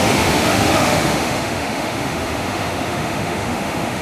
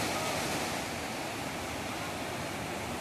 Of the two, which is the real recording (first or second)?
second